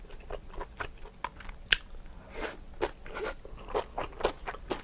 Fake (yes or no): no